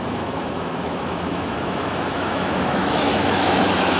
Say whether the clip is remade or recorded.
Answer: remade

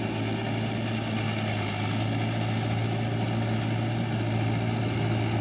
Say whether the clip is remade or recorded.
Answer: recorded